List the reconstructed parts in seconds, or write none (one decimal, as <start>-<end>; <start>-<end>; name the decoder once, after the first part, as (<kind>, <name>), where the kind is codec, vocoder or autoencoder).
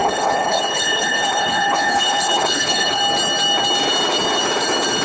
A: 0.0-3.0 (codec, HILCodec)